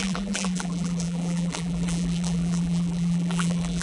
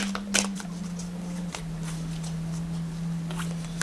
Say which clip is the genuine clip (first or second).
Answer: second